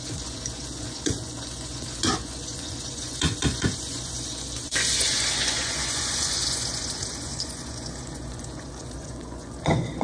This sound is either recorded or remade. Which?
remade